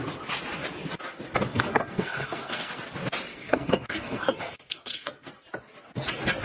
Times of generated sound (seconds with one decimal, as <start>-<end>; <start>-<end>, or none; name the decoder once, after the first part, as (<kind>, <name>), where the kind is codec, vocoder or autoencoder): 1.5-2.8 (codec, SNAC); 3.3-5.3